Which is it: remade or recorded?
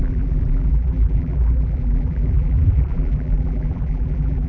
remade